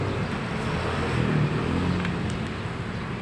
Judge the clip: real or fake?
real